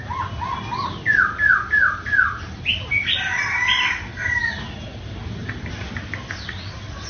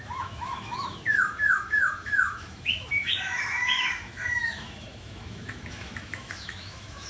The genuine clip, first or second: first